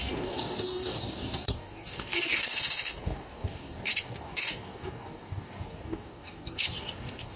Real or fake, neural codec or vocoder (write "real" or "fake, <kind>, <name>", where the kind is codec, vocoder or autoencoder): fake, codec, DAC